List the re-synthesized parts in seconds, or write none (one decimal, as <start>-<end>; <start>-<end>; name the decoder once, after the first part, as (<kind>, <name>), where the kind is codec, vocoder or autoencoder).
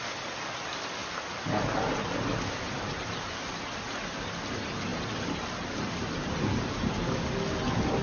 1.0-3.5 (vocoder, BigVGAN v2); 4.9-7.2